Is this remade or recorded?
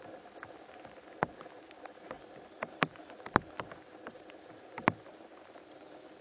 recorded